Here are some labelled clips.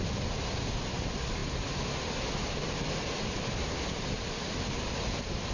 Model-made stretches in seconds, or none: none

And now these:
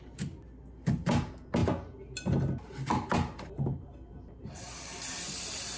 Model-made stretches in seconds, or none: none

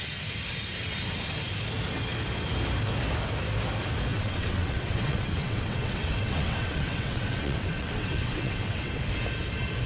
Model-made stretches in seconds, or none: 4.1-9.0 (vocoder, WaveNeXt)

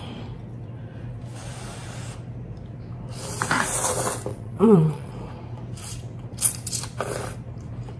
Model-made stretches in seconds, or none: 4.3-5.1 (vocoder, WaveNeXt)

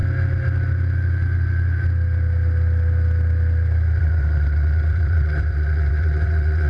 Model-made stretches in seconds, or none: 4.0-6.7 (vocoder, WaveNeXt)